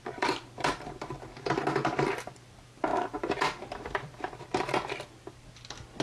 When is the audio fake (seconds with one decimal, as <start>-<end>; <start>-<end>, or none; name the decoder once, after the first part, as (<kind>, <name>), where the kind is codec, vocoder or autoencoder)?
2.9-4.4 (vocoder, BigVGAN v2)